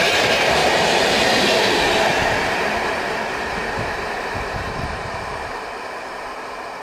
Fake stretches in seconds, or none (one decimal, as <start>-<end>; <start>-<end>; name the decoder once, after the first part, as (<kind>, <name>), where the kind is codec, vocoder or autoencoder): 0.0-0.6 (vocoder, BigVGAN v2); 2.5-6.8